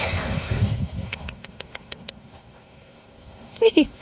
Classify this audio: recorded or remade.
remade